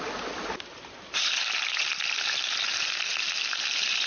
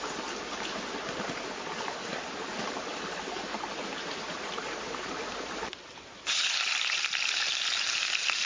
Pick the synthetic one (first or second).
second